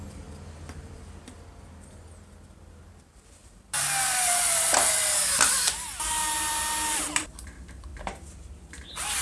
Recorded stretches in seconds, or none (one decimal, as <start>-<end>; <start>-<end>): none